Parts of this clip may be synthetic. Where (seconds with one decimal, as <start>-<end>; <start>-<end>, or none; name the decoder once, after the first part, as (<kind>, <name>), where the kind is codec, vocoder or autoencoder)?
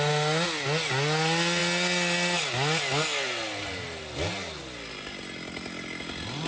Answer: none